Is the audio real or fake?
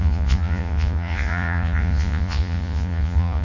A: fake